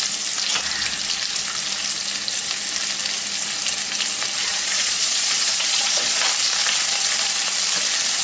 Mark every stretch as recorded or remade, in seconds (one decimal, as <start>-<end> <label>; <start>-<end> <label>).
0.0-4.5 recorded; 4.5-6.2 remade; 6.2-8.2 recorded